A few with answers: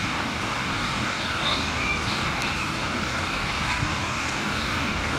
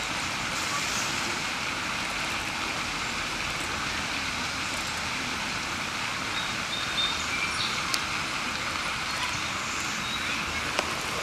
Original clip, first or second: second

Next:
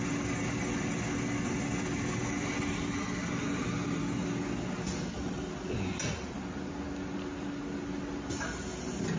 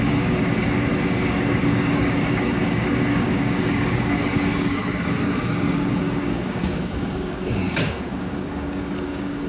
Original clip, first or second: first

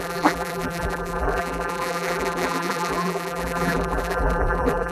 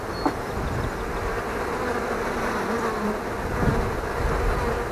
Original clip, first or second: second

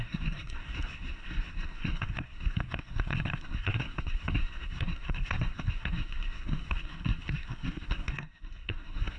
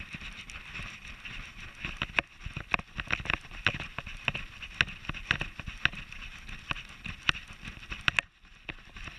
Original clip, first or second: second